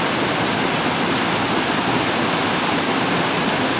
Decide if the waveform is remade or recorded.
recorded